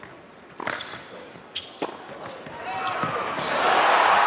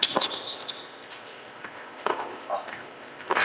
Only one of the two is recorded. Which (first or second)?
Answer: first